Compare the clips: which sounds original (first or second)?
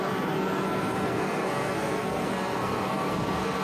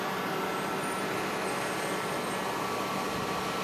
second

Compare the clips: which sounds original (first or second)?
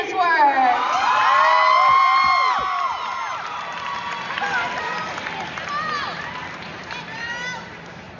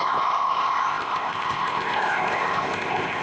first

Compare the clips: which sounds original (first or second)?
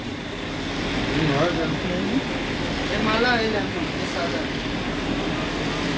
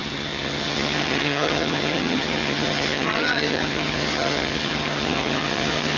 first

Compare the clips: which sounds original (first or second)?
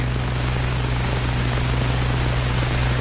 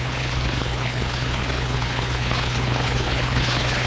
first